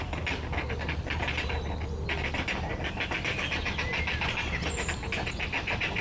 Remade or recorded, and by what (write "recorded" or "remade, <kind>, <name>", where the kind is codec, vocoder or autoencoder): recorded